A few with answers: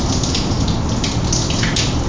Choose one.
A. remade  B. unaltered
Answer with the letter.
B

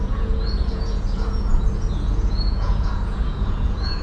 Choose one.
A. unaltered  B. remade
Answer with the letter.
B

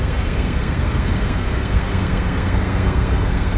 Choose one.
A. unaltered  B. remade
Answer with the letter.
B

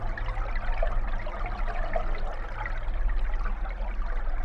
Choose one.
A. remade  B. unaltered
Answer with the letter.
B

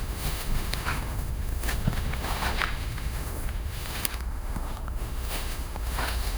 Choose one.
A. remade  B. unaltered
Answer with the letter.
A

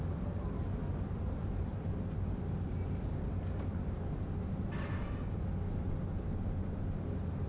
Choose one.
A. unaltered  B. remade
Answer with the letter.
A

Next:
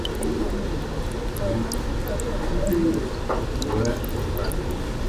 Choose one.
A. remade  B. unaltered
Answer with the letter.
B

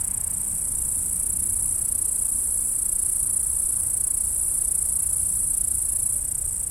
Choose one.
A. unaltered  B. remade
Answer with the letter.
A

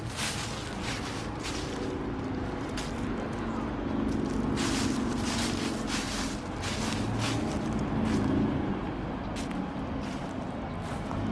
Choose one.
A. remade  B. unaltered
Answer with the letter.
B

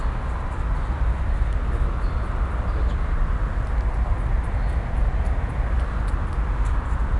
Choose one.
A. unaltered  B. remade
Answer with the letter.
A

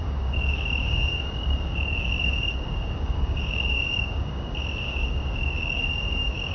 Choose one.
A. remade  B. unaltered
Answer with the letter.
A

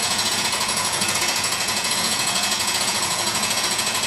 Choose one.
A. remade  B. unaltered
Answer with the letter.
A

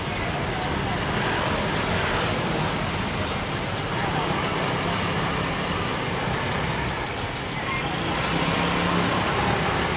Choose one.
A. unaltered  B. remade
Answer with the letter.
A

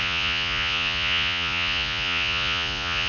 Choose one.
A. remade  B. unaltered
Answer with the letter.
A